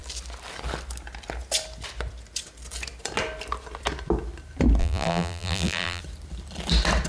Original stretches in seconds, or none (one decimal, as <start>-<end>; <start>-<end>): 0.0-4.8; 6.0-7.1